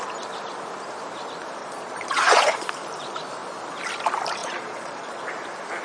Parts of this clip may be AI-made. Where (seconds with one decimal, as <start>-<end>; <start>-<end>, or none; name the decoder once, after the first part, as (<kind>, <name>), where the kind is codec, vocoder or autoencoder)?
1.6-2.7 (vocoder, Vocos); 4.4-5.3